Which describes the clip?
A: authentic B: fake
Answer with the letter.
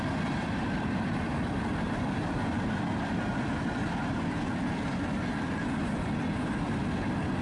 A